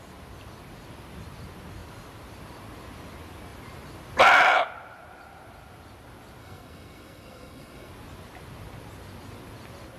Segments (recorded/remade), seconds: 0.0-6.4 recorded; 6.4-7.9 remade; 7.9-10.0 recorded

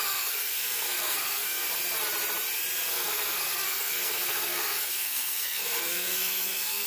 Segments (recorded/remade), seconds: 0.0-1.7 remade; 1.7-2.9 recorded; 2.9-6.9 remade

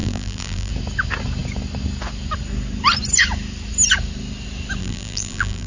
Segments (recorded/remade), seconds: 0.0-0.7 remade; 0.7-4.8 recorded; 4.8-5.7 remade